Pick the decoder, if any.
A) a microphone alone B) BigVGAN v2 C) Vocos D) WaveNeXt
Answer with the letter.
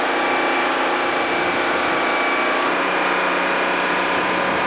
A